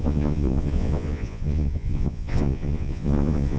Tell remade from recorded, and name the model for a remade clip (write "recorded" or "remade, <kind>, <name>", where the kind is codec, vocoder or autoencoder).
remade, vocoder, Vocos